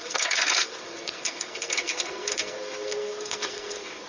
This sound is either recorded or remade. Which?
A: remade